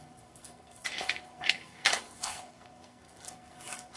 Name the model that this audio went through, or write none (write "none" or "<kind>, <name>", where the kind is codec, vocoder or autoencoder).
codec, SNAC